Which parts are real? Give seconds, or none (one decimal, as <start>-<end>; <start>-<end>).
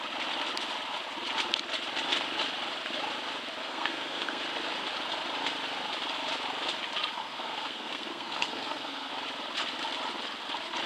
0.0-3.6; 4.4-7.2; 9.1-10.9